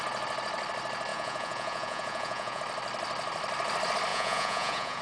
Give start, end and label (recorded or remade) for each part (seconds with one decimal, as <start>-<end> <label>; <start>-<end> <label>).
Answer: 0.0-1.1 recorded; 1.1-2.6 remade; 2.6-4.1 recorded; 4.1-5.0 remade